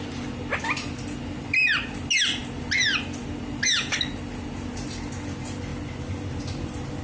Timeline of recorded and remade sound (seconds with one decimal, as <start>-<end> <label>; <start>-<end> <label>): 0.0-7.0 recorded